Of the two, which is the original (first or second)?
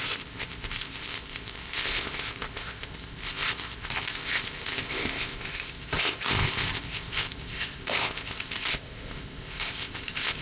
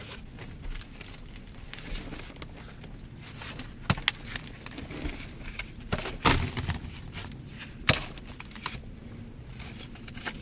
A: second